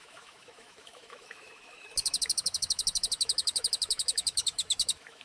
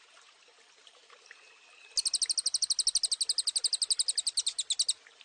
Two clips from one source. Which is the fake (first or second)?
first